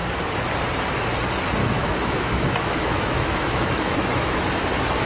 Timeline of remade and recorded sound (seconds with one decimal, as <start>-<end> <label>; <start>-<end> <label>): 0.0-1.6 recorded; 1.6-4.4 remade; 4.4-5.1 recorded